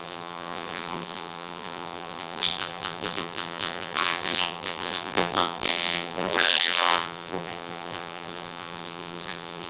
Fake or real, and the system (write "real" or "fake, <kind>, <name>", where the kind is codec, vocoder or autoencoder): fake, vocoder, BigVGAN v2